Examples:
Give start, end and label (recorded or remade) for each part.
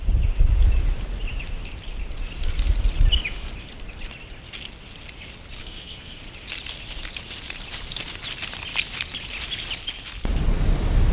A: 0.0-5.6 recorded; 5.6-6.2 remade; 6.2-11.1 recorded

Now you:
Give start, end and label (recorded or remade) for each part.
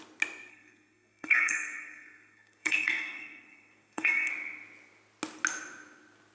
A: 0.0-0.5 recorded; 0.5-4.3 remade; 4.3-6.3 recorded